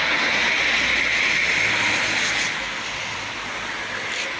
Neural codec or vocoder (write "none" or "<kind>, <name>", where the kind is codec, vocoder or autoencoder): none